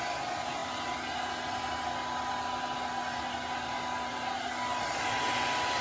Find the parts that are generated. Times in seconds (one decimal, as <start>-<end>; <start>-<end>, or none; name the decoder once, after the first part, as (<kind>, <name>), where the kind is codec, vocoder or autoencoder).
none